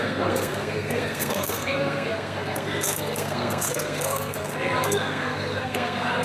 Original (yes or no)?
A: no